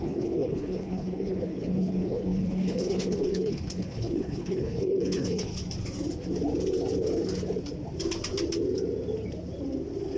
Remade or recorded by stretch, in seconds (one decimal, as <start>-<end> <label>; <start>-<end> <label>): 0.0-5.5 remade; 5.5-10.2 recorded